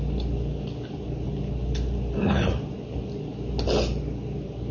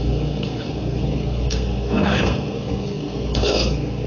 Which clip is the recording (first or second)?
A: first